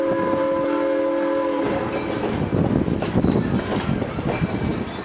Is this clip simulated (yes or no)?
no